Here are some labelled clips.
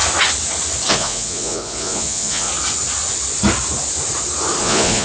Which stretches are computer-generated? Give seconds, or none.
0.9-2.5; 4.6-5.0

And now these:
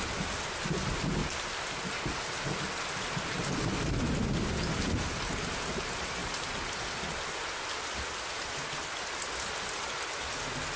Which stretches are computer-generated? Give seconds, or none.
none

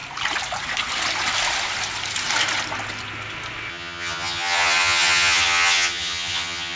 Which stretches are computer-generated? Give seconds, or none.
3.7-6.8

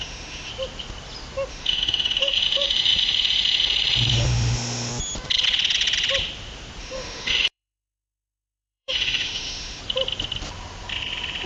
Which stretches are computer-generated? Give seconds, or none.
0.0-0.5; 1.5-4.9; 6.8-9.8

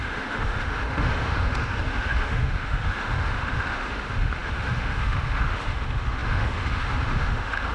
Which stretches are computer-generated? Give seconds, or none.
0.0-7.7